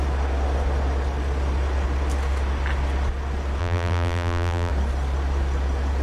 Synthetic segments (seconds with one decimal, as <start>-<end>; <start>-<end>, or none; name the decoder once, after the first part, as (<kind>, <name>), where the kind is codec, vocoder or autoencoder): 3.6-4.7 (vocoder, BigVGAN v2)